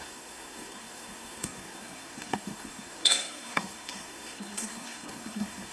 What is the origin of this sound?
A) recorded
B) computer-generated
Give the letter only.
B